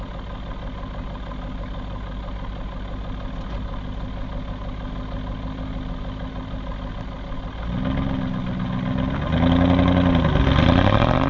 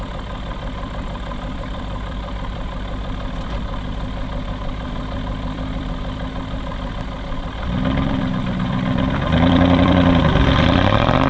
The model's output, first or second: second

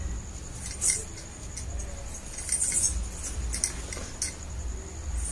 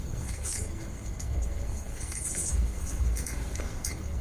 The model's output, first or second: second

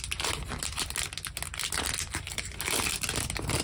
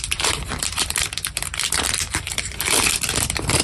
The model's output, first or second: second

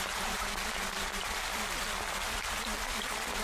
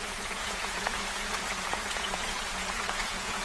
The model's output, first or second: second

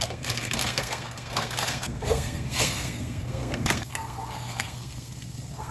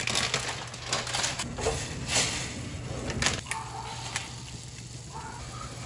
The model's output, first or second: first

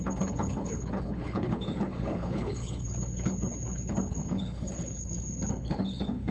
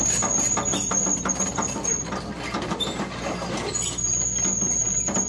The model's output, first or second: first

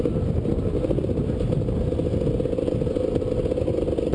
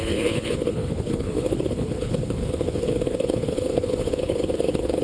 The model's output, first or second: second